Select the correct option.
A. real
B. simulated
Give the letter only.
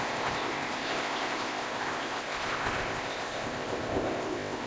B